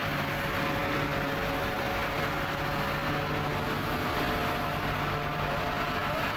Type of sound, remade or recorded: recorded